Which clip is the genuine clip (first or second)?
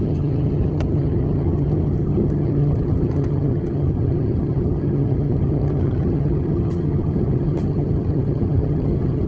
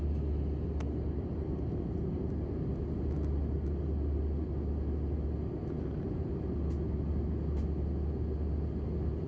second